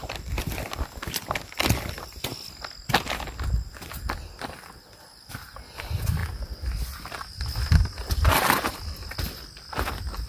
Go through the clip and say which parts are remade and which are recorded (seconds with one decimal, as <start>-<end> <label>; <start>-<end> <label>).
0.0-10.3 recorded

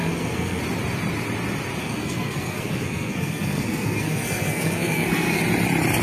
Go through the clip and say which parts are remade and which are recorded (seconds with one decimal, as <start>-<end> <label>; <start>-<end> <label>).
0.0-0.6 remade; 0.6-1.8 recorded; 1.8-5.4 remade; 5.4-6.0 recorded

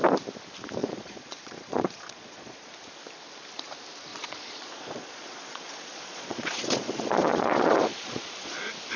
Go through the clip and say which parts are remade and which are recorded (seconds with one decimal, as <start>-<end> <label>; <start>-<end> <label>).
0.0-0.8 recorded; 0.8-2.7 remade; 2.7-4.1 recorded; 4.1-8.6 remade; 8.6-9.0 recorded

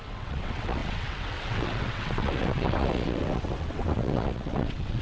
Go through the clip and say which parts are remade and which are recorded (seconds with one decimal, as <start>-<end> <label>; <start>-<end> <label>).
0.0-5.0 remade

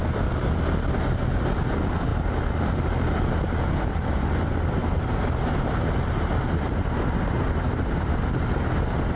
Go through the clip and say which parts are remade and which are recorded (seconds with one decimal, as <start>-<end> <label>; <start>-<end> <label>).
0.0-4.8 recorded; 4.8-8.4 remade; 8.4-9.2 recorded